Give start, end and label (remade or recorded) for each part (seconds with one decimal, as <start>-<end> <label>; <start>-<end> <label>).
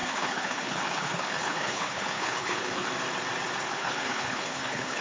0.0-2.9 remade; 2.9-3.7 recorded; 3.7-5.0 remade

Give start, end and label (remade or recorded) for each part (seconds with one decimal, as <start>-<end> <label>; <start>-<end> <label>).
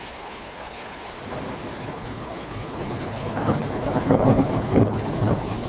0.0-1.1 remade; 1.1-1.7 recorded; 1.7-5.7 remade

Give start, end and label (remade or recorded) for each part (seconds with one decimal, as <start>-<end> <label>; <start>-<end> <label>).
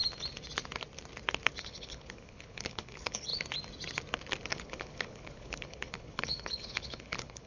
0.0-1.6 recorded; 1.6-3.3 remade; 3.3-4.5 recorded; 4.5-7.5 remade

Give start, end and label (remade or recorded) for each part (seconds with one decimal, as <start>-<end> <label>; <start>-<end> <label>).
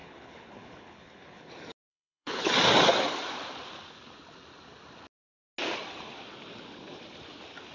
0.0-1.5 remade; 1.5-1.9 recorded; 1.9-2.5 remade; 2.5-7.7 recorded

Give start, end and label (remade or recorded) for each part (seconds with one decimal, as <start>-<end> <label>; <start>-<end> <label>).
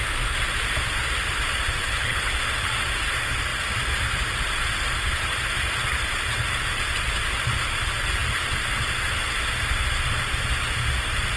0.0-1.8 recorded; 1.8-2.3 remade; 2.3-11.4 recorded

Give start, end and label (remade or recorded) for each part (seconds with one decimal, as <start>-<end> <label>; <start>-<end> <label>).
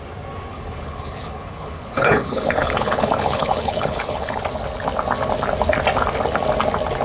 0.0-0.5 recorded; 0.5-4.4 remade; 4.4-7.0 recorded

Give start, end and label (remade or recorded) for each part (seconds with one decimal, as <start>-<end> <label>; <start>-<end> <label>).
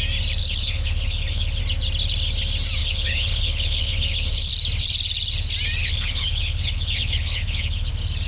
0.0-0.4 recorded; 0.4-1.6 remade; 1.6-2.8 recorded; 2.8-4.5 remade; 4.5-5.8 recorded; 5.8-7.9 remade; 7.9-8.3 recorded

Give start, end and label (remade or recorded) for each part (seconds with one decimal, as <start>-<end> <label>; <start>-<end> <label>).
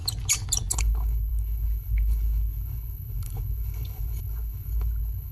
0.0-0.7 recorded; 0.7-5.3 remade